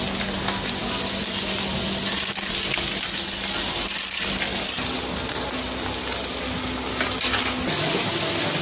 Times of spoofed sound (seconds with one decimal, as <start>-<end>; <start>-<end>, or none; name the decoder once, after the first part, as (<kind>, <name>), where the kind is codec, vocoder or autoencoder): none